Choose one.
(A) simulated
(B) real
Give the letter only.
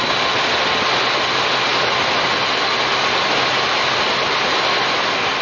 B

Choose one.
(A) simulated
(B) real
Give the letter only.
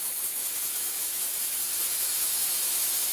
A